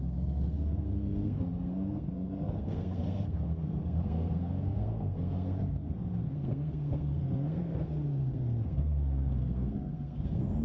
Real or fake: fake